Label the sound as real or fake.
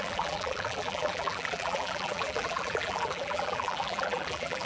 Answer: fake